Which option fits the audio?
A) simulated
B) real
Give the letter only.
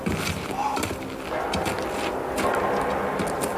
B